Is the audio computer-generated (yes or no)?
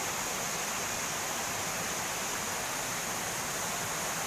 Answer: no